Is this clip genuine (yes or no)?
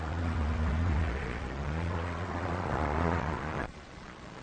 no